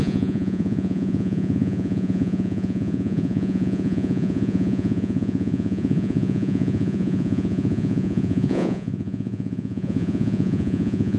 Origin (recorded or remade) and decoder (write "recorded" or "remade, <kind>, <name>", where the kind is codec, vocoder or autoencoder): remade, vocoder, Vocos